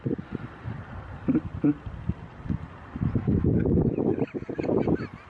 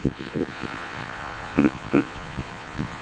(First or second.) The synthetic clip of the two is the second